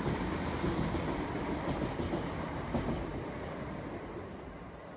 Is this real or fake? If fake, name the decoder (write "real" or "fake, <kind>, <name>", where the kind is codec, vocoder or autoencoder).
real